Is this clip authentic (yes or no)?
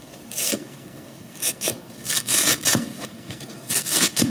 no